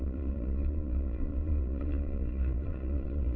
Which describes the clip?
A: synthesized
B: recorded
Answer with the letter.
A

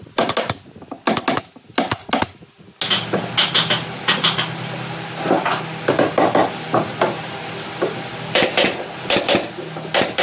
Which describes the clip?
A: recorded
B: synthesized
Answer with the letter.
A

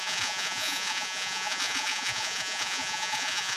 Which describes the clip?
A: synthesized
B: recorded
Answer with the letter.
A